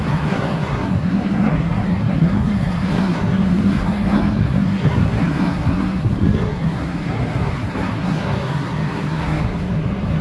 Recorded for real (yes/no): no